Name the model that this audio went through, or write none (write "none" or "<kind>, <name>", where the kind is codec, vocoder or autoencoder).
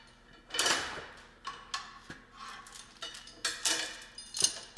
none